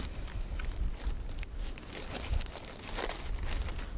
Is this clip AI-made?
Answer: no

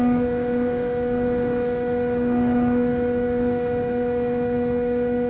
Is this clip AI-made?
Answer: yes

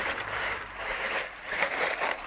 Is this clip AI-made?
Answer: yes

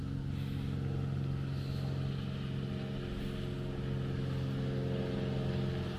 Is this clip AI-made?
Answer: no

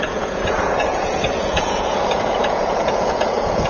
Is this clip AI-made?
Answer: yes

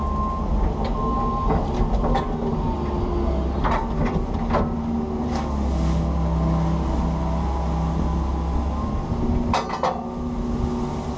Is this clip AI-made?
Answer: no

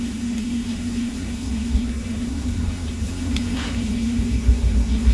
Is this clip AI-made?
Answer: yes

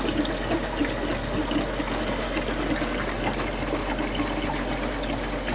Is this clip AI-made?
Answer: no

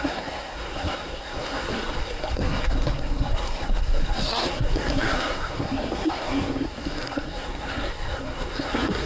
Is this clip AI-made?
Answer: yes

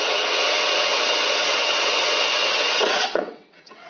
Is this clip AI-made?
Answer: yes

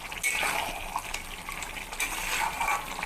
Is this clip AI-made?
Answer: no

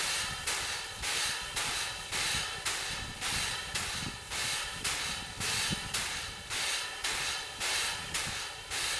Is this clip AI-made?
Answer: no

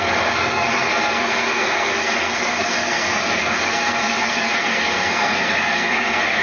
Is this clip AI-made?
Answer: yes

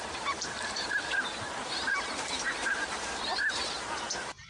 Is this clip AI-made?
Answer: yes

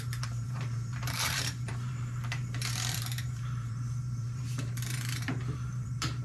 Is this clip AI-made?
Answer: yes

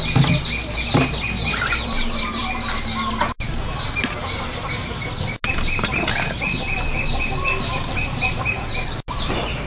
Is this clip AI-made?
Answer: no